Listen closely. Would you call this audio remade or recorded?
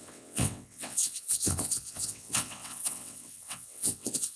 remade